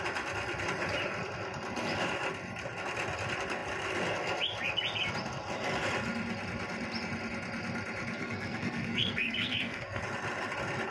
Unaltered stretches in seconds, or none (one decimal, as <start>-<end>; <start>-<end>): 0.0-8.2; 10.0-10.9

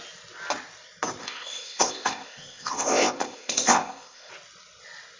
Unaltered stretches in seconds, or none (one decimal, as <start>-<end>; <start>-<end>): 0.0-1.2; 4.3-5.2